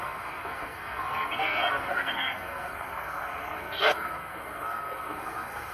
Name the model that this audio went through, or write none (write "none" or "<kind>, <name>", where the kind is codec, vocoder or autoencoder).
codec, SNAC